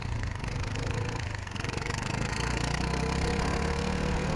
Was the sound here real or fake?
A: fake